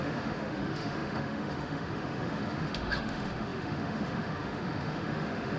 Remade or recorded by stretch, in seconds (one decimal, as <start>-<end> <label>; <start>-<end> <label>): 0.0-5.6 remade